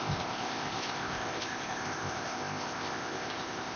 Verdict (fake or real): fake